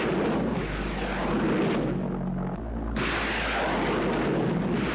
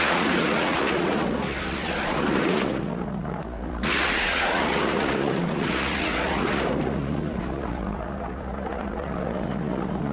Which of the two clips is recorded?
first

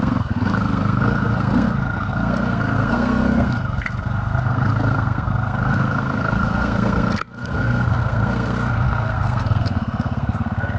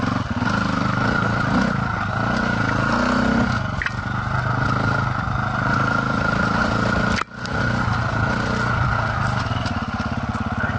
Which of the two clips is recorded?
second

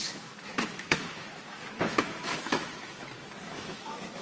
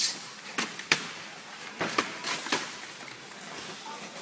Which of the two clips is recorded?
second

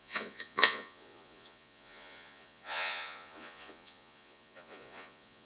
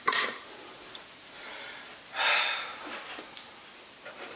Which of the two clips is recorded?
second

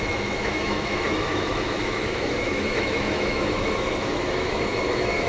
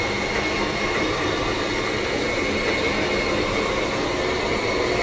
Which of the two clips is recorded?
second